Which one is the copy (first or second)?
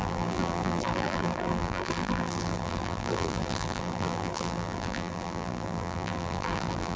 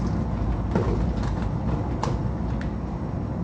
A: first